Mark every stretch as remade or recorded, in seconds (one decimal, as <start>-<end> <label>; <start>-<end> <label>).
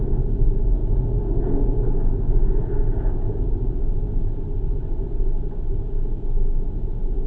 0.0-7.3 recorded